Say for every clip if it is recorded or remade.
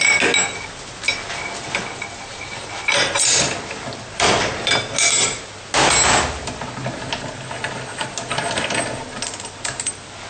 recorded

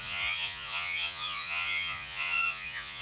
remade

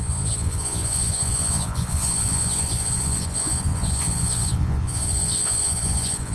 remade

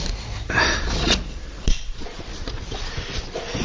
remade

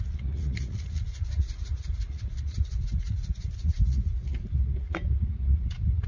remade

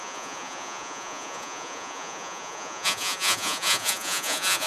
remade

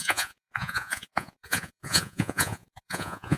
remade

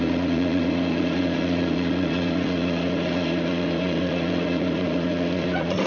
remade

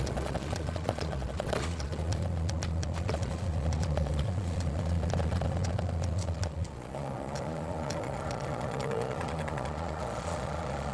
remade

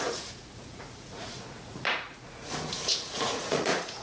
remade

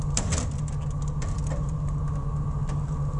recorded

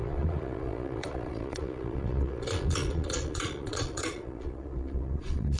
remade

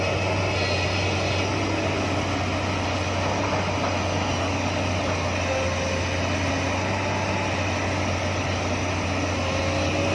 recorded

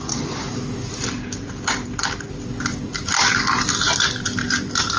recorded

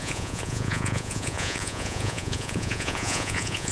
remade